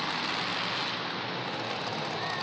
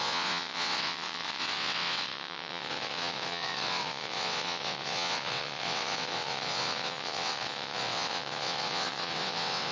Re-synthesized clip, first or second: second